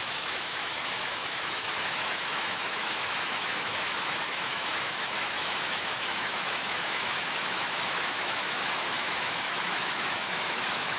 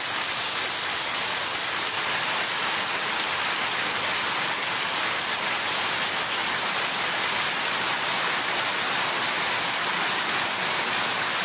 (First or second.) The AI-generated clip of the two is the first